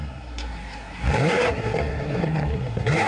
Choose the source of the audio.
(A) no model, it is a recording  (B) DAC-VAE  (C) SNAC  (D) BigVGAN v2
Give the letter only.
C